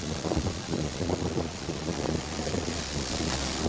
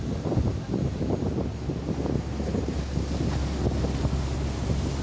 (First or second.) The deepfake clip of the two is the first